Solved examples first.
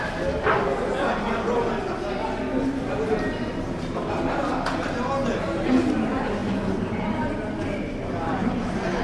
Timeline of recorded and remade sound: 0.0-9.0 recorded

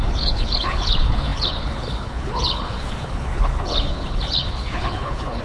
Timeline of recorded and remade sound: 0.0-5.4 remade

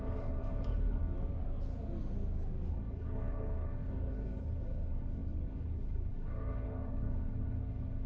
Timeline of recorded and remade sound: 0.0-1.0 remade; 1.0-2.7 recorded; 2.7-8.1 remade

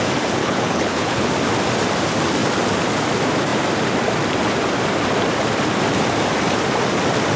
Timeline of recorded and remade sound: 0.0-0.4 recorded; 0.4-1.3 remade; 1.3-7.4 recorded

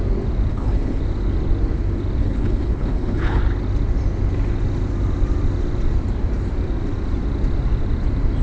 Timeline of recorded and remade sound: 0.0-0.5 recorded; 0.5-1.0 remade; 1.0-2.2 recorded; 2.2-3.4 remade; 3.4-8.4 recorded